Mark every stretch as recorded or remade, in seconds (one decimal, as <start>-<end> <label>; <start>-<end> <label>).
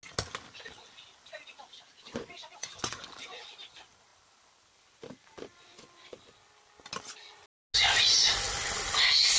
0.0-2.1 recorded; 2.1-3.4 remade; 3.4-9.4 recorded